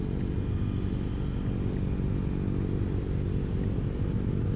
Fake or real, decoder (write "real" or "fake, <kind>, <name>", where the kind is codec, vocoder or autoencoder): real